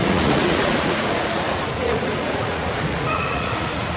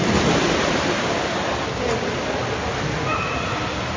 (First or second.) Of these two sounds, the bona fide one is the second